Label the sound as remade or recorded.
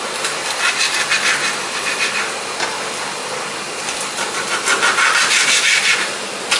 recorded